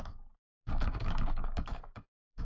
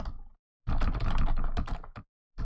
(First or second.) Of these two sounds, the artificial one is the first